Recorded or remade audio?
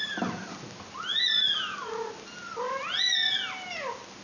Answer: recorded